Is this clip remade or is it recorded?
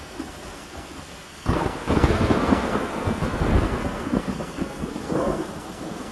remade